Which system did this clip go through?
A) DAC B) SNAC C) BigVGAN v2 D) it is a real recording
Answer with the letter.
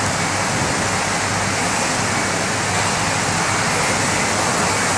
D